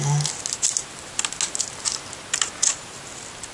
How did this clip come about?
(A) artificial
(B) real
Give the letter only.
B